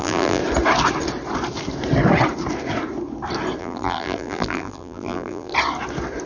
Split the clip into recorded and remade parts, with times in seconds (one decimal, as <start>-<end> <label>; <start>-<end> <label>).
0.0-0.4 remade; 0.4-3.6 recorded; 3.6-5.5 remade; 5.5-6.3 recorded